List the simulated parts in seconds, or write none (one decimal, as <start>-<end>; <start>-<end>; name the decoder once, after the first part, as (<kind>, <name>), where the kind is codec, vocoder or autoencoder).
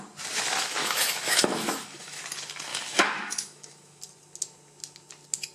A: 0.8-2.2 (autoencoder, DAC-VAE); 2.7-4.0